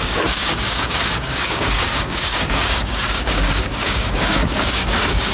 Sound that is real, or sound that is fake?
fake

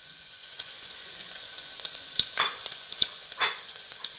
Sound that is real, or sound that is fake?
fake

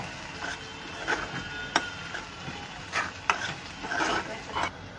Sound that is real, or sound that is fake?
real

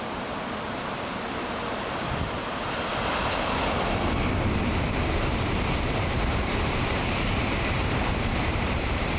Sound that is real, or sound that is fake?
fake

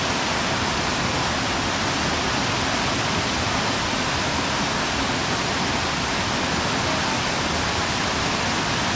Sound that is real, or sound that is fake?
real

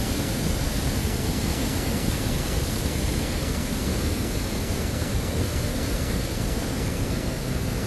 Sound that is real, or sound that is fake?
fake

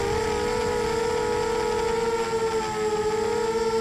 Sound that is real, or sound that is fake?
real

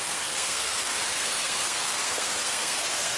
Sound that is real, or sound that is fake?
fake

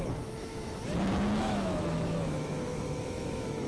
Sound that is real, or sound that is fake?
fake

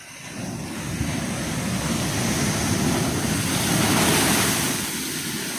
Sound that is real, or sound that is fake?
real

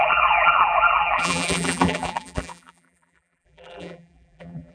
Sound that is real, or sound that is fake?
fake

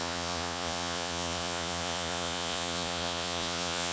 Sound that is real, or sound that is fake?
fake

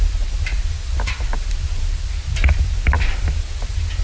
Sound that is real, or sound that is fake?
real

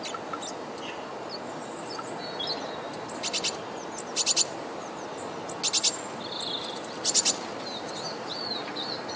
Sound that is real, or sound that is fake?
real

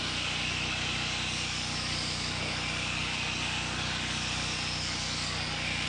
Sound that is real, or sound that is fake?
fake